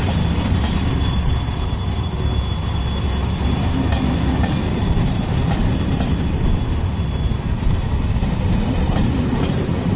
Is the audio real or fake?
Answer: real